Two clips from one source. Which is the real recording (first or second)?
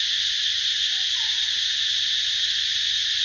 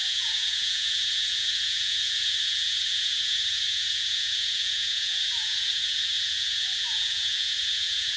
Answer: first